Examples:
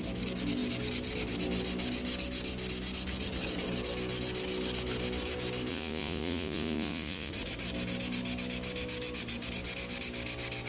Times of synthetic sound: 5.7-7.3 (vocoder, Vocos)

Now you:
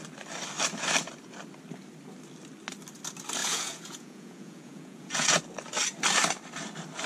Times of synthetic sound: 3.4-5.4 (vocoder, Vocos)